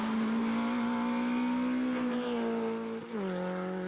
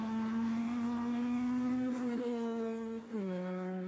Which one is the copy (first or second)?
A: second